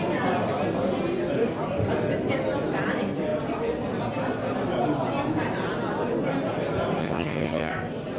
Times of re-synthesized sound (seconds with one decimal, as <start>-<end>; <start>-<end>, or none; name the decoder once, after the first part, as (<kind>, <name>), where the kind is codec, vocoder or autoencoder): 7.0-7.7 (vocoder, HiFi-GAN)